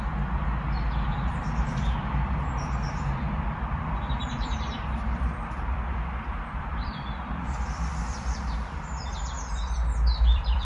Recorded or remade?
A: remade